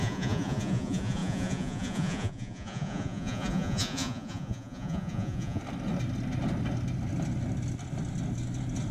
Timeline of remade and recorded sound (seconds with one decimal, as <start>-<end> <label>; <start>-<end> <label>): 0.0-5.6 remade; 5.6-8.9 recorded